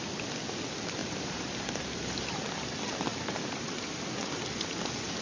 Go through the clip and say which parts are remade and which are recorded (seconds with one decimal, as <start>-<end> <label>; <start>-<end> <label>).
0.0-1.0 recorded; 1.0-2.4 remade; 2.4-3.1 recorded; 3.1-4.0 remade; 4.0-5.2 recorded